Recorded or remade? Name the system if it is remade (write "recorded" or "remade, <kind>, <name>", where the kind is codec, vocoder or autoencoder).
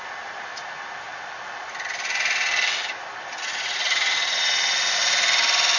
recorded